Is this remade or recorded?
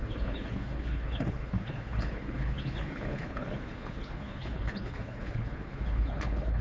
remade